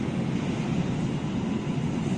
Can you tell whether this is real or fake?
real